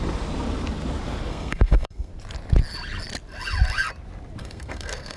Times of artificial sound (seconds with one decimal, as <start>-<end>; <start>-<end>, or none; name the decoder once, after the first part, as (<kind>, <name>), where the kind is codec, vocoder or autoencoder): 1.3-2.1 (codec, SNAC); 4.4-5.2